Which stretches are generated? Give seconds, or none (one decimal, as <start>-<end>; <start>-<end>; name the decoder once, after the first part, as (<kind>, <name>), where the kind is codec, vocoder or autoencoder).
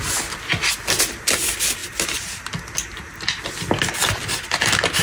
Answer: none